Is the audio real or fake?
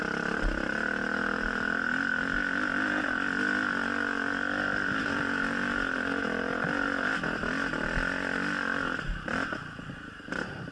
real